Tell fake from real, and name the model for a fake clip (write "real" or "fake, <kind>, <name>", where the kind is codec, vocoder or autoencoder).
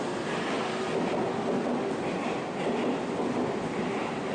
real